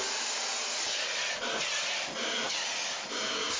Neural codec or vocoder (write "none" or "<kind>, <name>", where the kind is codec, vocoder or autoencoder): none